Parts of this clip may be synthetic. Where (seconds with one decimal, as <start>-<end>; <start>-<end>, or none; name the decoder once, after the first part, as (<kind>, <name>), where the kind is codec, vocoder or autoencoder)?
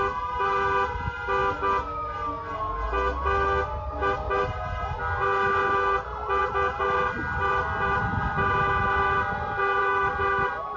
none